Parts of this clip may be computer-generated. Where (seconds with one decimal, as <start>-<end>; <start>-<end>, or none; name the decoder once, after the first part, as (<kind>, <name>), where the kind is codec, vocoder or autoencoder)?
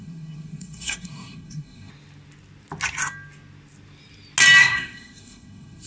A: 0.0-1.9 (codec, SNAC); 4.6-5.9